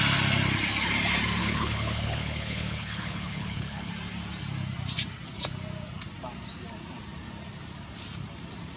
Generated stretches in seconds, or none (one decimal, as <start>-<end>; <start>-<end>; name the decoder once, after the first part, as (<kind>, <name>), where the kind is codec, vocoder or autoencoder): 1.4-3.9 (codec, HILCodec)